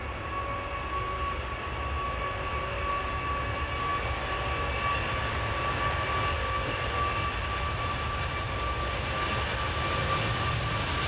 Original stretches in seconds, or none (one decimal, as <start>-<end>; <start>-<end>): 0.0-11.1